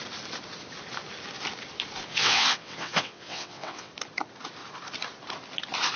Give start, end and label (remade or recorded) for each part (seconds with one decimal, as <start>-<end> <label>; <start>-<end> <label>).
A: 0.0-2.1 recorded; 2.1-3.9 remade; 3.9-6.0 recorded